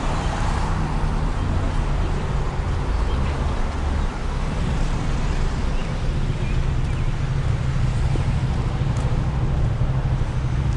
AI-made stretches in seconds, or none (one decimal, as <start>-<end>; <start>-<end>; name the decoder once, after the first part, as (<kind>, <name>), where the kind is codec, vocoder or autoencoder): none